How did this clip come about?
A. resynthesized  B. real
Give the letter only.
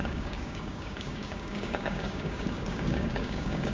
A